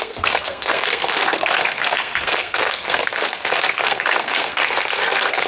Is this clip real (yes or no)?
no